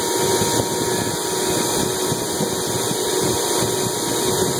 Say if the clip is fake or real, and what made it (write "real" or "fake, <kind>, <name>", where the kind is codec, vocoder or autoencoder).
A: real